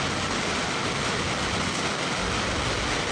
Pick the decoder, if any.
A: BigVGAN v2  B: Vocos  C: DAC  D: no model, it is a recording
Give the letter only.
D